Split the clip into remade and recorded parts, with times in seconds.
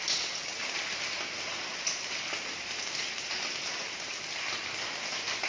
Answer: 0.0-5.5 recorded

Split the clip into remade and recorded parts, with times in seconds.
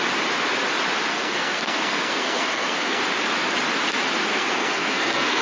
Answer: 0.0-1.1 recorded; 1.1-3.0 remade; 3.0-4.3 recorded; 4.3-5.4 remade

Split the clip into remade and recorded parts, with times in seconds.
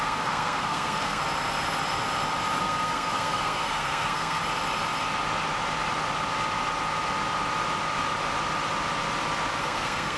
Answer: 0.0-1.2 remade; 1.2-2.6 recorded; 2.6-4.4 remade; 4.4-9.6 recorded; 9.6-10.2 remade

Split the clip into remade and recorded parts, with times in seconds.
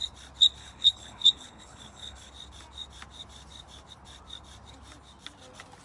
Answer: 0.0-0.6 recorded; 0.6-2.3 remade; 2.3-5.8 recorded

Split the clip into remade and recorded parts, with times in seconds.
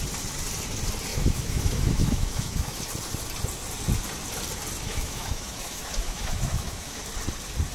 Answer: 0.0-1.1 recorded; 1.1-2.8 remade; 2.8-4.9 recorded; 4.9-7.0 remade; 7.0-7.7 recorded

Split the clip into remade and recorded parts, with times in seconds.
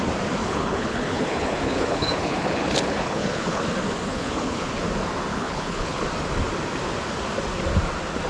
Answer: 0.0-0.4 recorded; 0.4-3.6 remade; 3.6-4.1 recorded; 4.1-4.7 remade; 4.7-5.3 recorded; 5.3-6.0 remade; 6.0-8.3 recorded